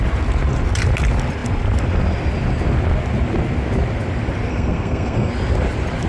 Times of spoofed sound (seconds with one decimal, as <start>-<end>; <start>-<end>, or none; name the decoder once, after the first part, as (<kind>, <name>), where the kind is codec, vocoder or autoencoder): 4.5-5.3 (codec, SNAC)